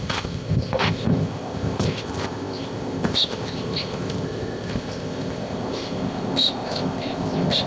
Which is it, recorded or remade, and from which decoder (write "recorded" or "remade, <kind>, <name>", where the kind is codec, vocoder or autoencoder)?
remade, codec, ZipCodec